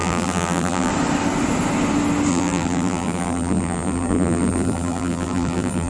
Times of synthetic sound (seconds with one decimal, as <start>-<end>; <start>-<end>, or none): 0.0-0.9; 2.3-5.9